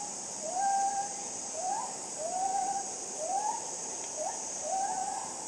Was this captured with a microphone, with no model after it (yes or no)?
no